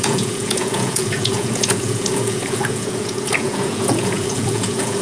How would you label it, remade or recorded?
remade